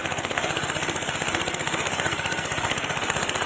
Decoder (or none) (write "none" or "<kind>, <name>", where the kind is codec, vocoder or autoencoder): codec, SNAC